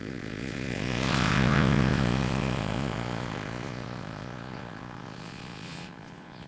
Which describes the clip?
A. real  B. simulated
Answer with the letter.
B